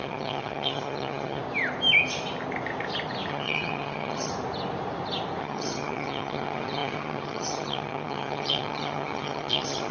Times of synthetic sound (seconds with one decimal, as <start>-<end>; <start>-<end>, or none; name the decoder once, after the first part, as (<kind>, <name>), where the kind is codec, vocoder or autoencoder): 0.0-1.4 (vocoder, HiFi-GAN); 3.3-4.3; 5.4-9.9